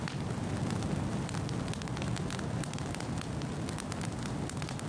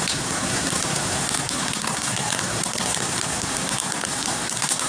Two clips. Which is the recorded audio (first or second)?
first